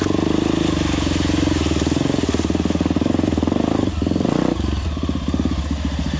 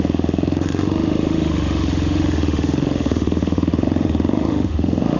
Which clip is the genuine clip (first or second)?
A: first